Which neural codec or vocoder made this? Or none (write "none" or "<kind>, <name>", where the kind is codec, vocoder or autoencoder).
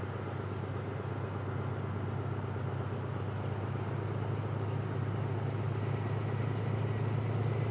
none